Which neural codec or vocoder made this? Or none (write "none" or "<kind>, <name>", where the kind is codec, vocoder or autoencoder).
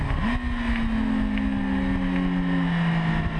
none